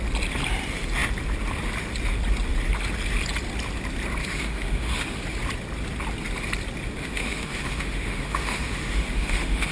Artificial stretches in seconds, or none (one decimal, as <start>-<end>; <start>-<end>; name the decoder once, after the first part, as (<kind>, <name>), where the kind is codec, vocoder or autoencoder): 4.2-5.2 (autoencoder, DAC-VAE); 7.0-9.7